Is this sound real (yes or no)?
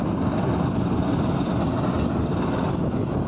yes